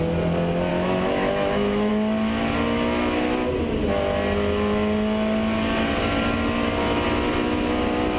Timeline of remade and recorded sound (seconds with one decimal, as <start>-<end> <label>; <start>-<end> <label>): 0.0-0.7 recorded; 0.7-1.9 remade; 1.9-8.2 recorded